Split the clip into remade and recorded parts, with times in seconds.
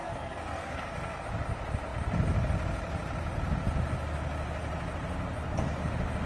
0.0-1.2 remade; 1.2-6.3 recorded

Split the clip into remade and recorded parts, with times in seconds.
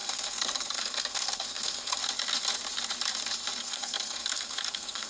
0.0-2.0 remade; 2.0-3.6 recorded; 3.6-5.1 remade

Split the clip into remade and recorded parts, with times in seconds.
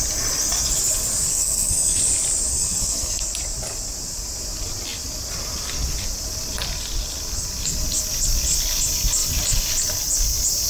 0.0-1.3 recorded; 1.3-2.0 remade; 2.0-2.5 recorded; 2.5-3.2 remade; 3.2-10.7 recorded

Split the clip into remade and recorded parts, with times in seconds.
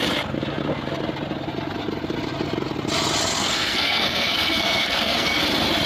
0.0-3.4 recorded; 3.4-5.4 remade; 5.4-5.9 recorded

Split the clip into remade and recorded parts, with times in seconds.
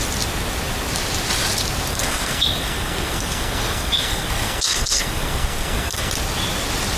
0.0-1.9 recorded; 1.9-6.1 remade; 6.1-7.0 recorded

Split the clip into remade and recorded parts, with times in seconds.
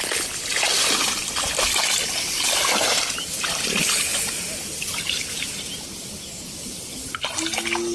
0.0-7.9 recorded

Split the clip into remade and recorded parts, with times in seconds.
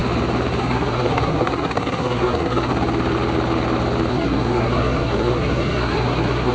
0.0-0.6 recorded; 0.6-2.7 remade; 2.7-4.1 recorded; 4.1-6.5 remade